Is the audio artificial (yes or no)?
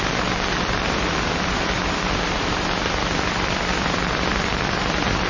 yes